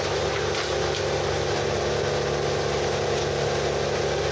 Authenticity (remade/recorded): recorded